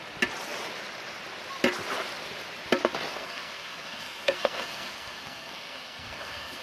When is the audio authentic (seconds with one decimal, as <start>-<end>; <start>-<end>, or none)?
0.0-3.1